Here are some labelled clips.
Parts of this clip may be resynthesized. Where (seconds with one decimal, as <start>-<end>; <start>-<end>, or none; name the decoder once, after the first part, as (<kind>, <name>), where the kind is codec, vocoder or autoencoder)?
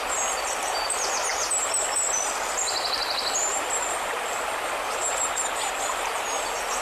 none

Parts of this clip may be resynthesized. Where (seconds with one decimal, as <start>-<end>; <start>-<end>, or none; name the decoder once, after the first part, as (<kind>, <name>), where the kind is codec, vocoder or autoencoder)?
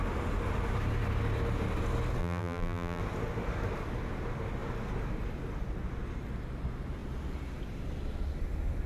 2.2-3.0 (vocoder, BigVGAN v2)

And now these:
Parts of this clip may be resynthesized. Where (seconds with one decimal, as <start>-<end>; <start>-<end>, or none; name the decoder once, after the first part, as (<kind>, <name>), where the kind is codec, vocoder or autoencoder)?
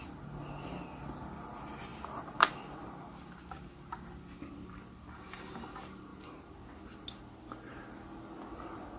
1.9-4.7 (vocoder, BigVGAN v2); 7.7-9.0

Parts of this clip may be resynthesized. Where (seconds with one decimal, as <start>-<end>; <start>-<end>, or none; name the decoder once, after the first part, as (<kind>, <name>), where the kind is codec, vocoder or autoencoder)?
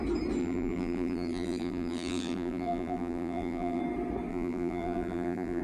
0.4-3.8 (vocoder, BigVGAN v2); 4.3-5.6